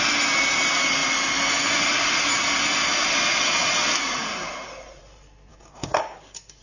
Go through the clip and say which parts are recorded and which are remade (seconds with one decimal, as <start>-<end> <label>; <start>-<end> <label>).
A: 0.0-5.5 recorded; 5.5-6.6 remade